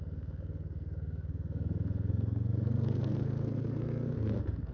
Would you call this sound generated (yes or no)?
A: yes